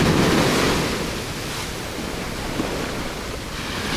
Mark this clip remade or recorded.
recorded